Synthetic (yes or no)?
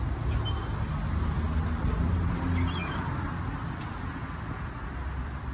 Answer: no